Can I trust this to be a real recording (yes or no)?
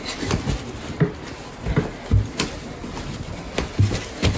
yes